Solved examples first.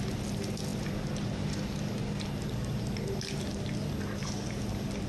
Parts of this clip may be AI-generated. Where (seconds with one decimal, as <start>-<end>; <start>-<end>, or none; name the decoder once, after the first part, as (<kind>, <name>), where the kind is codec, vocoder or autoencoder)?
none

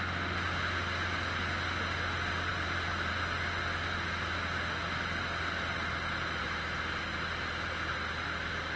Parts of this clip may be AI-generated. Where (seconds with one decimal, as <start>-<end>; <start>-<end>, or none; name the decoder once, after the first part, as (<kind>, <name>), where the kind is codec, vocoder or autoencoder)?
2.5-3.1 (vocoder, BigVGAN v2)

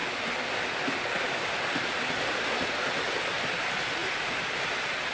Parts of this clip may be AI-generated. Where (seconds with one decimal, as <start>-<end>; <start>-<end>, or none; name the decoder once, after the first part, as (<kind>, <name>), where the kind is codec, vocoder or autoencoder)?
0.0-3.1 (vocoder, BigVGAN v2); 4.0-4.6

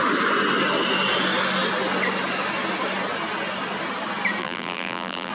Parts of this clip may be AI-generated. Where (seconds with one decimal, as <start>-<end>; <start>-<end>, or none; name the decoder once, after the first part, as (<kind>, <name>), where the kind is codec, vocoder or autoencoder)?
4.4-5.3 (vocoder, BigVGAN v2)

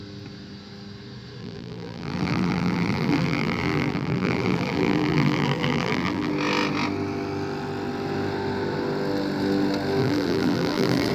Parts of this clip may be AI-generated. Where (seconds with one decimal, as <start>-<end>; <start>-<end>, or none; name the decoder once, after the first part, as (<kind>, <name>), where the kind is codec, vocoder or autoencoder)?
1.4-6.3 (vocoder, BigVGAN v2); 10.0-11.1